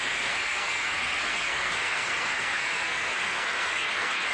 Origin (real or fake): fake